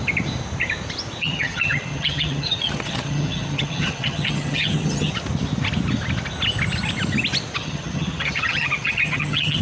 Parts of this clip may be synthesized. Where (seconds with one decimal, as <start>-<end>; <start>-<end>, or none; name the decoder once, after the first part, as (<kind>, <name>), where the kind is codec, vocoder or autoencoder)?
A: 1.2-5.1 (vocoder, HiFi-GAN); 7.6-9.6